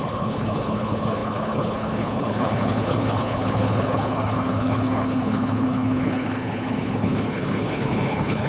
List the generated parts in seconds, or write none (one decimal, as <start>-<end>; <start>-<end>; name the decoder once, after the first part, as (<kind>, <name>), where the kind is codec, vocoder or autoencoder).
0.0-8.5 (codec, HILCodec)

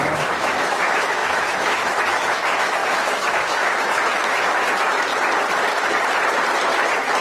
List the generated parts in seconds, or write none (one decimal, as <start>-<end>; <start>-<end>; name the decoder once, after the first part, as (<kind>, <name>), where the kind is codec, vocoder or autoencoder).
0.0-5.1 (autoencoder, DAC-VAE)

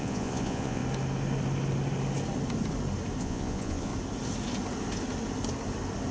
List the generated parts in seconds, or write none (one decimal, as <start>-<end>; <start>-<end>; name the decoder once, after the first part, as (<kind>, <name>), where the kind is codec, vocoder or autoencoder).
0.0-0.8 (vocoder, Vocos); 3.2-3.9

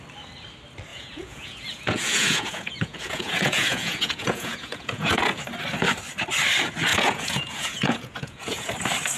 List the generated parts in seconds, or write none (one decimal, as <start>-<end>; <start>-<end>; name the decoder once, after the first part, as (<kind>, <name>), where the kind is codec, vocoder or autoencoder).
0.9-5.4 (vocoder, Vocos); 6.9-8.7

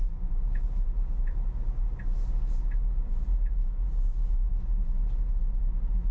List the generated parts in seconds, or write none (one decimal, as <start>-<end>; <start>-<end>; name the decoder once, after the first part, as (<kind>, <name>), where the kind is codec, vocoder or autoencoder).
none

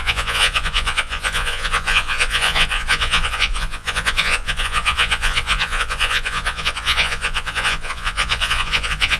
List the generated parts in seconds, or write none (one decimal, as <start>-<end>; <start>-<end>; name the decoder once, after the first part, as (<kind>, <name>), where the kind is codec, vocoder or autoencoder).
0.0-9.2 (vocoder, Vocos)

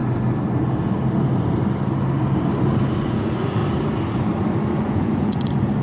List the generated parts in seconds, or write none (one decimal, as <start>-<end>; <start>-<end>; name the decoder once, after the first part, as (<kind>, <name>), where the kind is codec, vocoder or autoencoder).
3.0-3.6 (vocoder, Vocos); 4.7-5.8